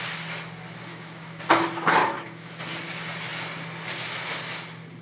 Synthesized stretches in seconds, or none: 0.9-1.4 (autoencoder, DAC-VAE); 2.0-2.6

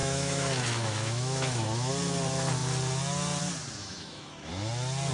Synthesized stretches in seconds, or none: 0.0-1.9 (autoencoder, DAC-VAE); 3.8-4.5